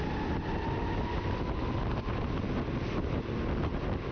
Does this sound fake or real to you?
real